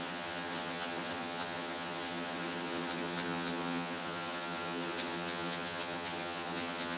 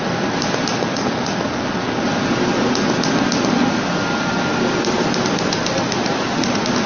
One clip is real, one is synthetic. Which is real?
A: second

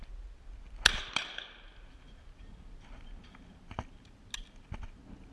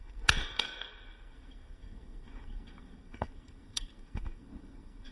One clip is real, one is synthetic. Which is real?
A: first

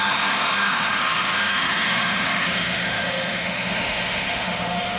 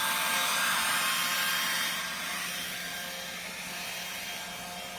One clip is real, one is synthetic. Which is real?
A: second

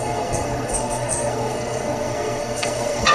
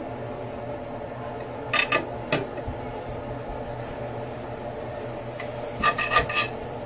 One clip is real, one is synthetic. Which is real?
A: second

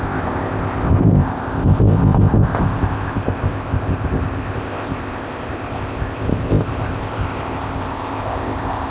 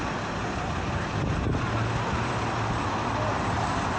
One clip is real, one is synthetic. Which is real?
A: second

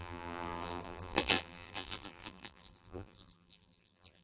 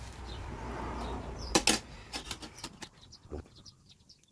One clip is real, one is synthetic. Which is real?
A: second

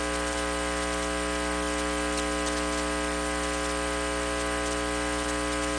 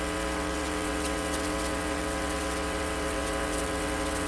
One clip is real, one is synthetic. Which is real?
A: first